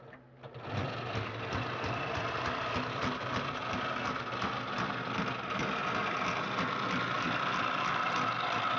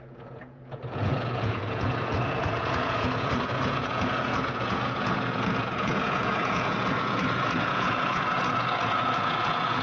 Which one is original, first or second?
first